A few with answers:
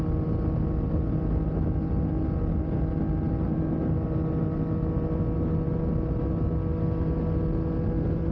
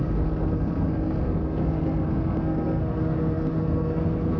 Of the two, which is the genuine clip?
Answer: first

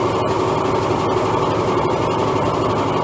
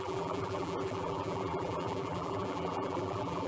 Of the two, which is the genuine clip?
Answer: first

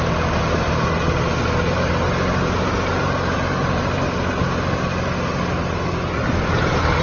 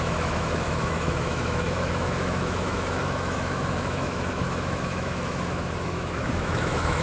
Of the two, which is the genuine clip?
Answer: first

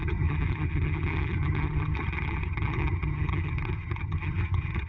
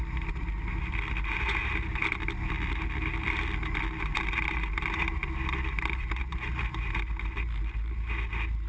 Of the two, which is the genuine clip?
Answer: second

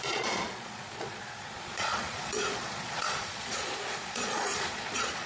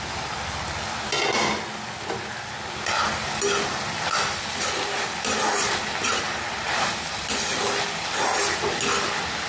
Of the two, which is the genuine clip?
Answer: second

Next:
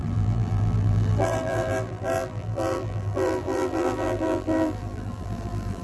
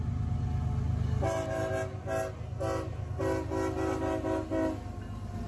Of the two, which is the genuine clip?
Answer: second